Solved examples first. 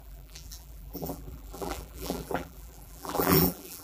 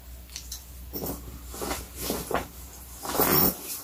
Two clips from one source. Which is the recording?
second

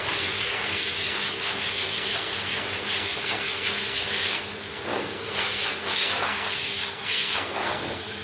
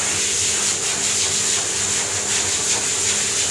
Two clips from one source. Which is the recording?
second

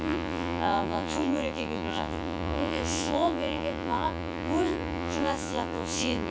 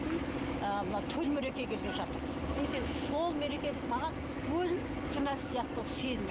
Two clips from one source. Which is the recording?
second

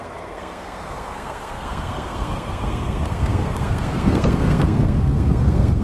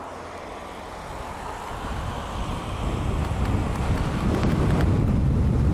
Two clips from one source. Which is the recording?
second